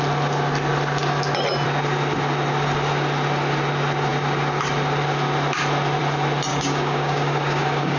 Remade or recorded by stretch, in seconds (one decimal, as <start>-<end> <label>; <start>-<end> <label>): 0.0-6.5 recorded; 6.5-8.0 remade